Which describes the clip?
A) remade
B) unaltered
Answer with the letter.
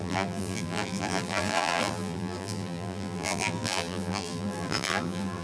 A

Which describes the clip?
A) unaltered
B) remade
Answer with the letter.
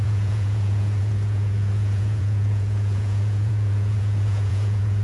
B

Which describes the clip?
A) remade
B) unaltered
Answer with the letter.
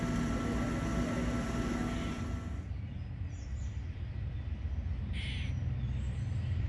B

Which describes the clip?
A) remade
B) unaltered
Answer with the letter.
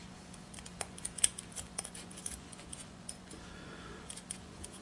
A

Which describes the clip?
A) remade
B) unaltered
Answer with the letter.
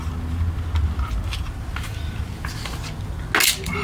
B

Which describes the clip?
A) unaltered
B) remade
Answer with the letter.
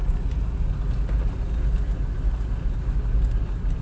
A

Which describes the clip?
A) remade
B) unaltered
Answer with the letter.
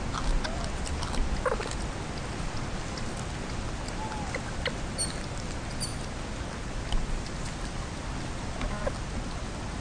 B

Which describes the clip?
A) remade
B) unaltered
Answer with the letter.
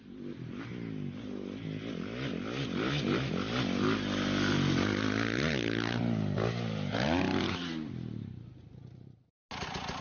B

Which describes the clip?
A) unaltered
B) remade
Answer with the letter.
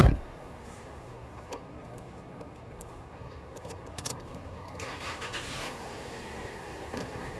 B